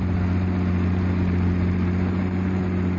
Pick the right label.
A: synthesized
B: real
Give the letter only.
B